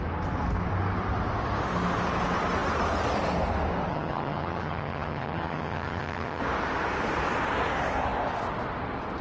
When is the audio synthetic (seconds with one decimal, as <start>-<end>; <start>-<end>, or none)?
3.9-6.4